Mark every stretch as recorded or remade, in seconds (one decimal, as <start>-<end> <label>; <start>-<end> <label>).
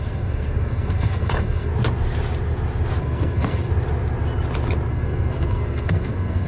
0.0-1.7 remade; 1.7-3.0 recorded; 3.0-3.7 remade; 3.7-4.9 recorded; 4.9-6.5 remade